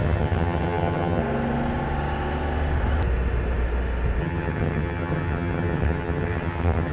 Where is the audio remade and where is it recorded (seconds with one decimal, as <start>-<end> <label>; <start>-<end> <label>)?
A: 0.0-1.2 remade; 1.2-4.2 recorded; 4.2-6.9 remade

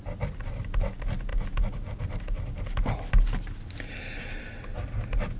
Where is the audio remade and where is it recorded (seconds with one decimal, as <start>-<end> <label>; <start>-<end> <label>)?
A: 0.0-5.4 recorded

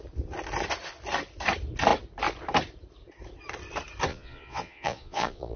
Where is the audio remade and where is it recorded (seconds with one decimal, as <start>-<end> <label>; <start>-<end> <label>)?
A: 0.0-4.1 recorded; 4.1-5.6 remade